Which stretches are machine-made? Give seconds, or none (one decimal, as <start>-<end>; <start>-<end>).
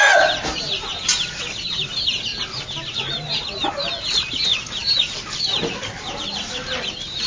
4.8-5.5